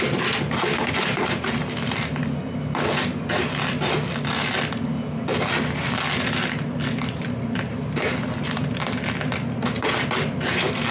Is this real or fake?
real